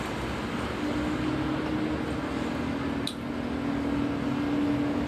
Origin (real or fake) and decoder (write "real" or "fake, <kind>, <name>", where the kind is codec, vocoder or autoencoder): real